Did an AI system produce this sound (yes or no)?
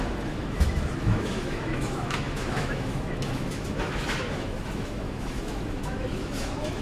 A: yes